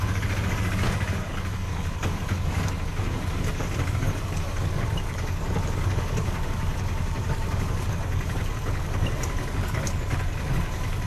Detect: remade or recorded remade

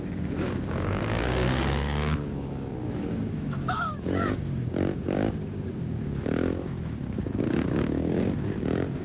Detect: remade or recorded remade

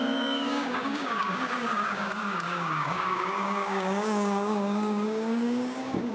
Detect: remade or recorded remade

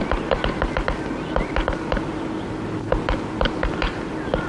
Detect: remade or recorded recorded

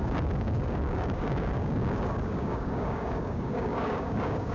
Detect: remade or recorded remade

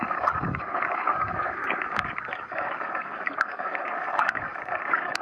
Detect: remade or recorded remade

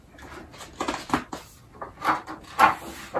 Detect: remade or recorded recorded